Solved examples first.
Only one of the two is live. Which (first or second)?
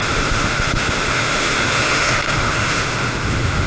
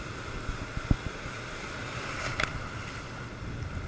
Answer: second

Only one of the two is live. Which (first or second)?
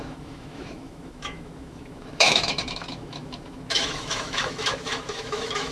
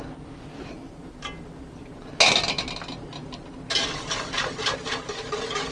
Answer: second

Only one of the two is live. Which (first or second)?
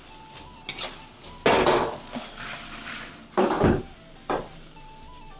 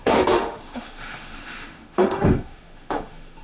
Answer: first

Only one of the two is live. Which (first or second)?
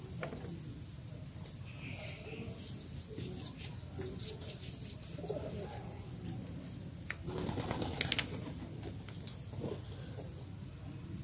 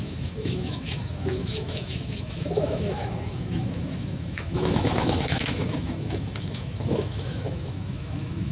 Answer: first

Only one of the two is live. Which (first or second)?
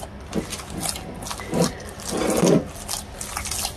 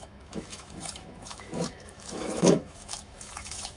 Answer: first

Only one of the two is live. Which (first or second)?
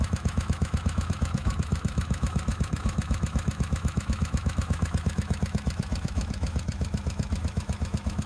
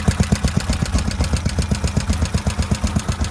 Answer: second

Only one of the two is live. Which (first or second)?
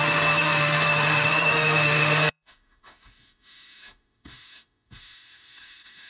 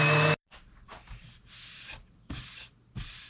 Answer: second